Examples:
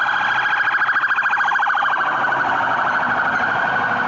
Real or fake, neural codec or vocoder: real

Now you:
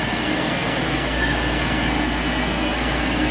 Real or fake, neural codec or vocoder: fake, codec, SNAC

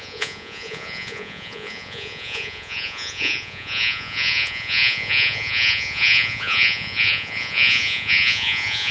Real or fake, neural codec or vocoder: fake, vocoder, Vocos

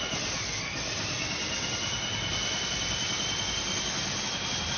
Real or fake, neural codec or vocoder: real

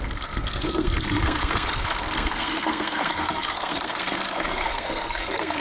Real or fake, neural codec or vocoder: fake, codec, SNAC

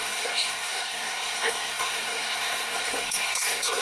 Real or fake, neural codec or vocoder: fake, codec, SNAC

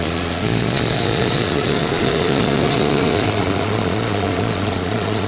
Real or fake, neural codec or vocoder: fake, vocoder, Vocos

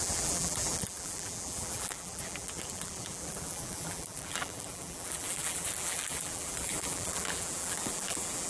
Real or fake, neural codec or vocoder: fake, vocoder, BigVGAN v2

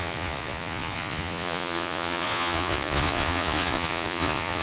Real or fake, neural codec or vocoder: fake, vocoder, Vocos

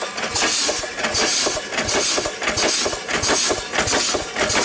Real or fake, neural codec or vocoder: real